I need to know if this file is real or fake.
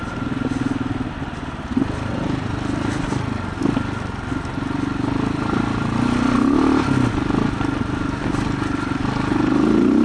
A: real